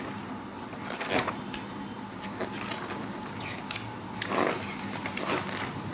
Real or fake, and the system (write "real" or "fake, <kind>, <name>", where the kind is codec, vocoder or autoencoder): real